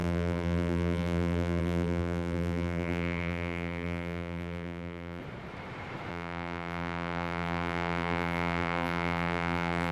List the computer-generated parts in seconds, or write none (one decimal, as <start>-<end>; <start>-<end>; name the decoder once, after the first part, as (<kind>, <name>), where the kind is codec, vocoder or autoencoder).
0.0-5.2 (vocoder, BigVGAN v2); 6.1-9.9